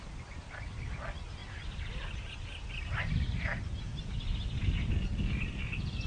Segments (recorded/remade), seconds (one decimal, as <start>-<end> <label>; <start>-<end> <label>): 0.0-6.1 recorded